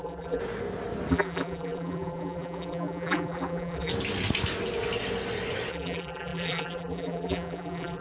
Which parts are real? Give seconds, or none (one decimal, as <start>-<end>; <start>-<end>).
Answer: 0.4-1.1; 3.9-5.7